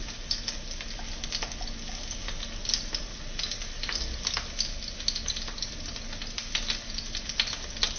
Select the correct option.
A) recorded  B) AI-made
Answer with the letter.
A